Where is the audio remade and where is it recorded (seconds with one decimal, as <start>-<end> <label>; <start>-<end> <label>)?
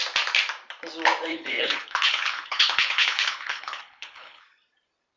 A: 0.0-1.3 recorded; 1.3-4.4 remade; 4.4-5.2 recorded